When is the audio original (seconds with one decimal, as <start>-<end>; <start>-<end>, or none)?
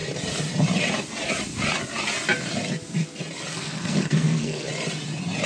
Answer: 0.0-3.5; 4.7-5.5